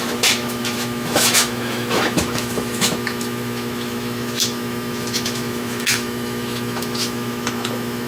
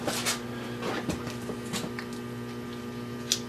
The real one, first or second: second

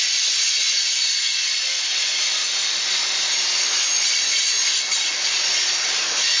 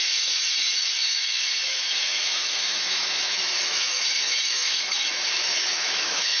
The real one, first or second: first